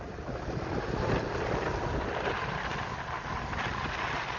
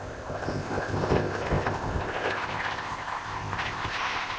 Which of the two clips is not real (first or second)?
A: second